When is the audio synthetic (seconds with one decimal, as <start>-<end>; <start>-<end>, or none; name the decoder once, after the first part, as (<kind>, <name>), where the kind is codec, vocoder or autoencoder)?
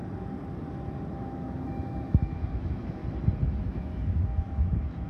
1.1-3.0 (autoencoder, DAC-VAE); 3.6-5.1